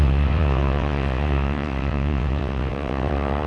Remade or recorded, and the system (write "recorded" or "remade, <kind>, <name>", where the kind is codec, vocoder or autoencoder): remade, vocoder, WaveNeXt